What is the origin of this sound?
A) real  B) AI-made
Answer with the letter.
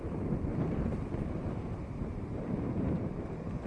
B